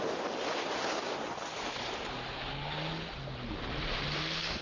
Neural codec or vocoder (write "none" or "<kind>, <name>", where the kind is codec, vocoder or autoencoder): none